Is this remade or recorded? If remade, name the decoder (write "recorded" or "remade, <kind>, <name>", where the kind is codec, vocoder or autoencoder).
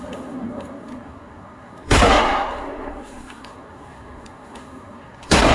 remade, codec, SNAC